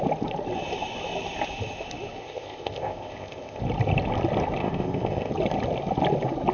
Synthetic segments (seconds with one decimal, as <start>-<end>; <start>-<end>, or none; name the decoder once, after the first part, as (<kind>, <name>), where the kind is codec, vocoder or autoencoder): 2.2-3.6 (codec, ZipCodec); 4.6-5.3